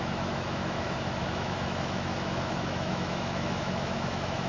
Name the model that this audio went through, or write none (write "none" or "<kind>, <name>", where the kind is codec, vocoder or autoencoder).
autoencoder, DAC-VAE